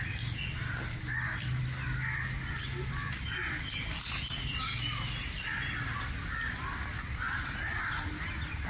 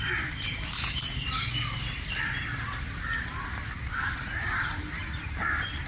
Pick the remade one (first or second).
second